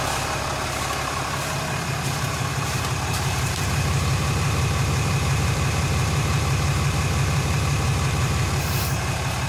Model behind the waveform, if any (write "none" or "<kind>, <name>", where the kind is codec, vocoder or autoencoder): vocoder, BigVGAN v2